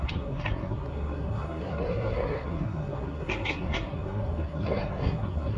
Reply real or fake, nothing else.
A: fake